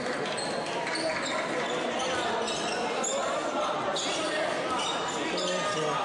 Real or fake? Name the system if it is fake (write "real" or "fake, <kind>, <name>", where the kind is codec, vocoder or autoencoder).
real